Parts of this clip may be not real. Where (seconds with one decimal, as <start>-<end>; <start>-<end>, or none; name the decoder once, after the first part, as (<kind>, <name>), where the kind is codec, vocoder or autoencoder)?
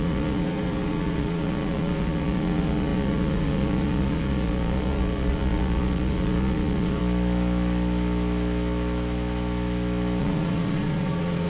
0.0-7.0 (vocoder, Vocos); 10.2-11.5